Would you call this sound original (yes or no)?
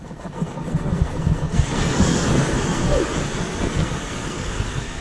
no